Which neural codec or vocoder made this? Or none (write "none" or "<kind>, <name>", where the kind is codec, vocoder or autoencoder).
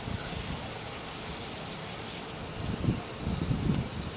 none